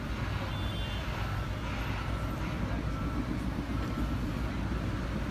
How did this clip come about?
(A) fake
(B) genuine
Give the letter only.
B